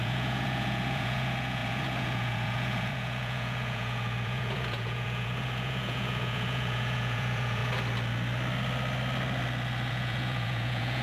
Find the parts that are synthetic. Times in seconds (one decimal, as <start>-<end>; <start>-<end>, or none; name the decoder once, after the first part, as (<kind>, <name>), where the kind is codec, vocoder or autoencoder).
0.0-7.6 (vocoder, Vocos); 9.9-11.0